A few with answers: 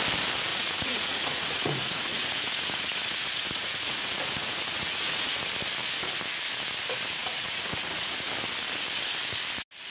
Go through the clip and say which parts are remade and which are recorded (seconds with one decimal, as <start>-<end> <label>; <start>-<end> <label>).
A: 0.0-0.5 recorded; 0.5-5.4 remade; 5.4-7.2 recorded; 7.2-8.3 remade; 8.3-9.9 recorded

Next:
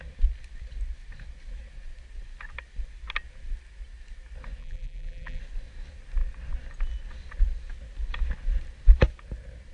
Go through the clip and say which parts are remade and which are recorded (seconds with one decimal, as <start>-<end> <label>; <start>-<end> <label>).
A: 0.0-4.6 recorded; 4.6-5.4 remade; 5.4-9.7 recorded

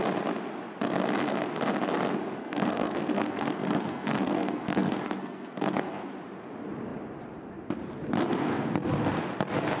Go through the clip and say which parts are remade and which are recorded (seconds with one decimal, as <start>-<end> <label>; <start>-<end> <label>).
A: 0.0-2.4 recorded; 2.4-6.1 remade; 6.1-9.8 recorded

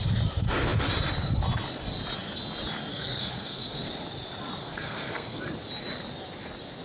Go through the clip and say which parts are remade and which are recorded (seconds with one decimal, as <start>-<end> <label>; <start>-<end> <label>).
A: 0.0-2.9 recorded; 2.9-3.9 remade; 3.9-4.6 recorded; 4.6-5.4 remade; 5.4-6.8 recorded

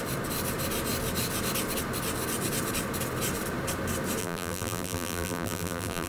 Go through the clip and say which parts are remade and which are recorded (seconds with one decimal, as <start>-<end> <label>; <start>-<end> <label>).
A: 0.0-4.2 recorded; 4.2-6.1 remade

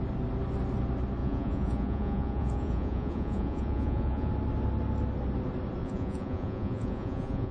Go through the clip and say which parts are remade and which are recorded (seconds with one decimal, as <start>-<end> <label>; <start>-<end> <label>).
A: 0.0-1.2 recorded; 1.2-4.3 remade; 4.3-5.8 recorded; 5.8-7.5 remade